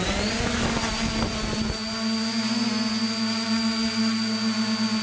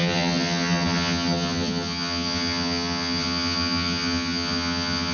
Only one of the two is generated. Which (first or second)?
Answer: second